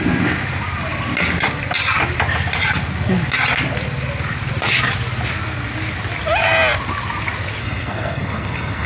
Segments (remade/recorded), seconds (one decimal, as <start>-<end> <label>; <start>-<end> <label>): 0.0-7.6 recorded; 7.6-8.9 remade